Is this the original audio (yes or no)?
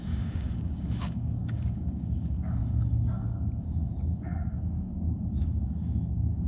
no